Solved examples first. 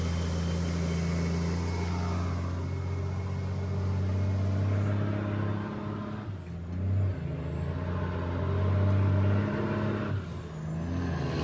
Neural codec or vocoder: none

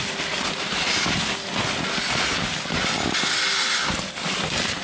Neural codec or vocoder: none